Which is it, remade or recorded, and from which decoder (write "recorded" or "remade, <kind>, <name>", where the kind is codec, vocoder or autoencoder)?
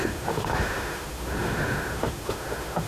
remade, autoencoder, DAC-VAE